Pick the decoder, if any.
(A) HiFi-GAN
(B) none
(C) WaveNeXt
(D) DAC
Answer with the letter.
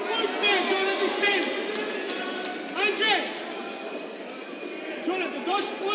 B